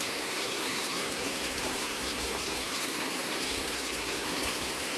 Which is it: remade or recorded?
remade